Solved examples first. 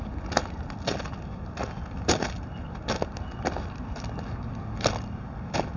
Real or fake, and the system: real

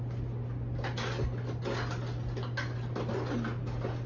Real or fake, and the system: real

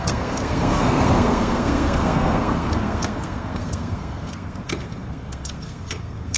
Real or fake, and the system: fake, codec, SNAC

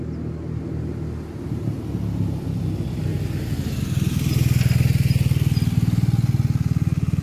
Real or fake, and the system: real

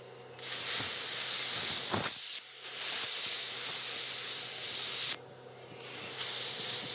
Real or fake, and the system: real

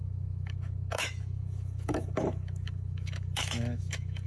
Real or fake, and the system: fake, autoencoder, DAC-VAE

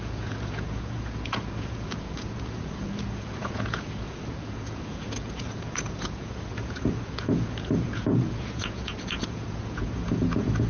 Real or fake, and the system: fake, vocoder, Vocos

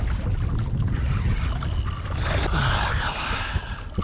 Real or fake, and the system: real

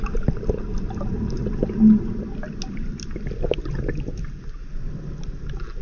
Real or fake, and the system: real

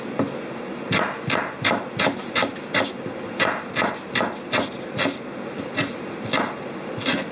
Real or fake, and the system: real